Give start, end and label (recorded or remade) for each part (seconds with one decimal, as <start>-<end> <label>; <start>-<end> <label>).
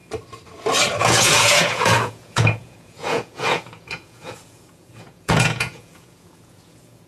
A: 0.0-1.0 recorded; 1.0-7.1 remade